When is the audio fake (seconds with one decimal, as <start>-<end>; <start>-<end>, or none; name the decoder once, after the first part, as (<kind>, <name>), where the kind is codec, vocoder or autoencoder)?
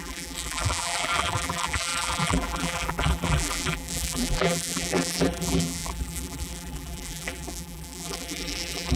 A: 0.0-9.0 (vocoder, BigVGAN v2)